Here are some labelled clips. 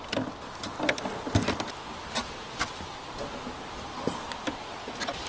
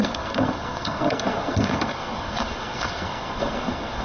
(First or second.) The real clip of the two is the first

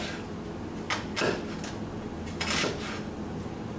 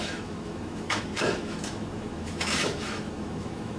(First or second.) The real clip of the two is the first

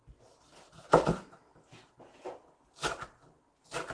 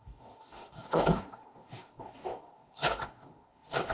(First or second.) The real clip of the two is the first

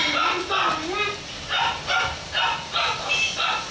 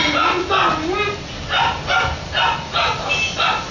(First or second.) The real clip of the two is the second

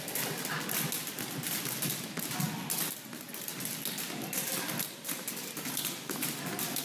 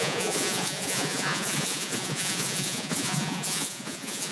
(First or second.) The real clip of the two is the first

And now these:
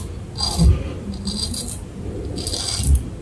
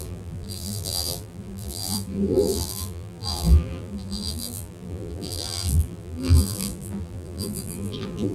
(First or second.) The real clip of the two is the first